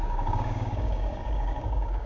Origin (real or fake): fake